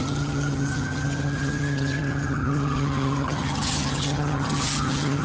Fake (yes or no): yes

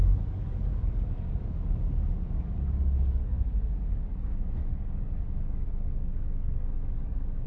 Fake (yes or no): yes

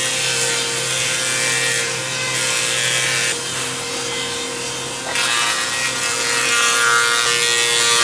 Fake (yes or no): no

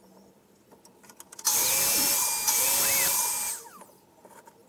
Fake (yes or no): no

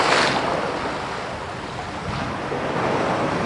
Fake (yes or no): no